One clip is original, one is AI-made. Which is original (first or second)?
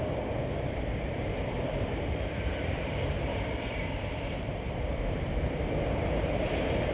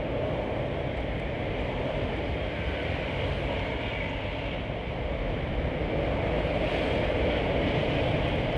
second